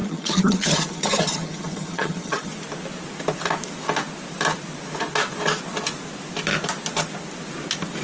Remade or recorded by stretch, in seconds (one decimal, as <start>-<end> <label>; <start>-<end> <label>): 0.0-2.5 remade; 2.5-8.0 recorded